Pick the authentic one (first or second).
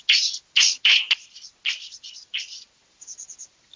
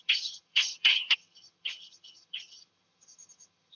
first